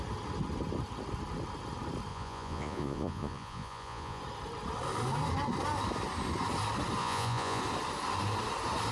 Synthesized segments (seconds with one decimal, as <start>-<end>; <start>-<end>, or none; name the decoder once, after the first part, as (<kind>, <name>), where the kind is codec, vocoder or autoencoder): 2.1-4.2 (vocoder, Vocos); 7.0-7.6